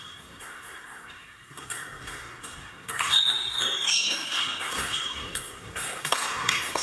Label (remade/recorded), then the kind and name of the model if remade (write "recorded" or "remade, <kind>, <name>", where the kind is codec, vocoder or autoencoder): remade, codec, SNAC